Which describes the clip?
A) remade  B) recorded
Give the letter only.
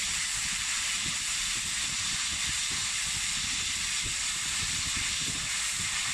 A